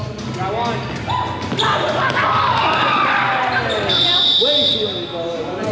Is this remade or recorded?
recorded